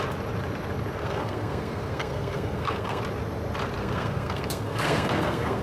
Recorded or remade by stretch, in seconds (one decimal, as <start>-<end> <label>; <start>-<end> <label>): 0.0-1.0 recorded; 1.0-3.0 remade; 3.0-3.8 recorded; 3.8-5.6 remade